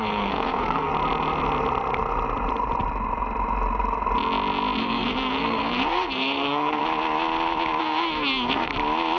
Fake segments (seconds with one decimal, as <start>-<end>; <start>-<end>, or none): 0.0-0.9; 4.8-6.8; 7.8-8.7